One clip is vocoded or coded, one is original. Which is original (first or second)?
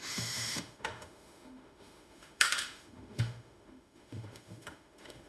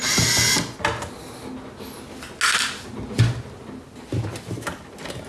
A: second